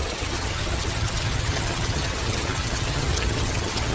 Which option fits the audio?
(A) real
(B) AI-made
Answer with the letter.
B